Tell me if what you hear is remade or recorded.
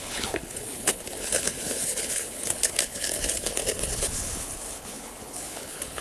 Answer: remade